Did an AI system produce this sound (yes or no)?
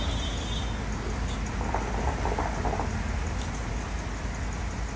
no